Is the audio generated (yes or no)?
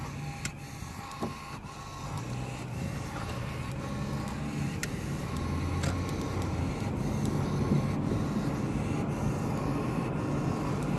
no